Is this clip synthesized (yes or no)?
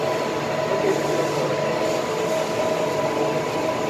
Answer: no